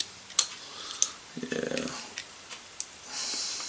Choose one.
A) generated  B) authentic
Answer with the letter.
B